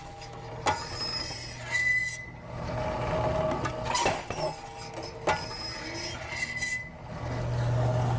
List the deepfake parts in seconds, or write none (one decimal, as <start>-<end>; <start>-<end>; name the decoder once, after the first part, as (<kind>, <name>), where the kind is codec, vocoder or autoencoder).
0.0-0.5 (autoencoder, DAC-VAE)